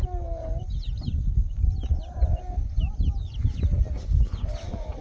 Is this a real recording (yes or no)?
yes